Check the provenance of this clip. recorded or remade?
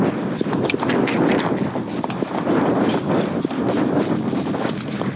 recorded